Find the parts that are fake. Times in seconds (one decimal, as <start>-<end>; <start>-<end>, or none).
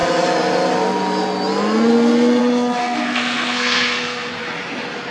2.8-4.4